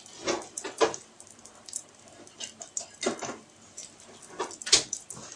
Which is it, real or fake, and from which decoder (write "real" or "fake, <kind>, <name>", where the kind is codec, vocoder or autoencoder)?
real